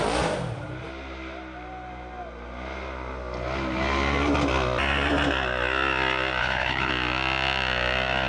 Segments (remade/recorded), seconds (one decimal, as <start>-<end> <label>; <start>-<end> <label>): 0.0-6.4 recorded; 6.4-6.9 remade; 6.9-8.3 recorded